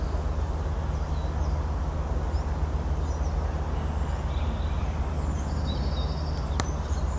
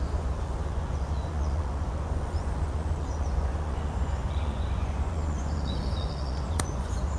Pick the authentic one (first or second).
first